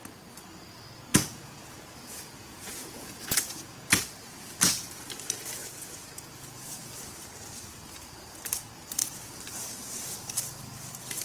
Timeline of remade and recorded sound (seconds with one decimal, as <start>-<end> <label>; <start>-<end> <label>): 0.0-1.1 recorded; 1.1-4.0 remade; 4.0-5.6 recorded; 5.6-6.8 remade; 6.8-11.2 recorded